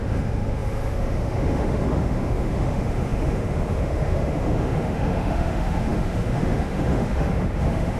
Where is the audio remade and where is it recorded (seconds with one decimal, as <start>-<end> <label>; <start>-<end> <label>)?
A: 0.0-8.0 remade